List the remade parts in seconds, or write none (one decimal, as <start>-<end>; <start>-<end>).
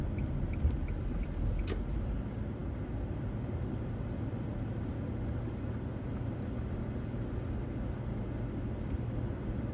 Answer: none